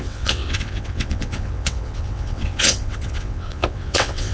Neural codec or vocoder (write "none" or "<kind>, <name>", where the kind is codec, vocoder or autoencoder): vocoder, WaveNeXt